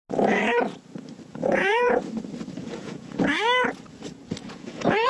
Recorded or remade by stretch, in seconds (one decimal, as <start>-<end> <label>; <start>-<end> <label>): 0.0-1.3 recorded; 1.3-2.0 remade; 2.0-2.6 recorded; 2.6-3.2 remade; 3.2-4.4 recorded; 4.4-5.1 remade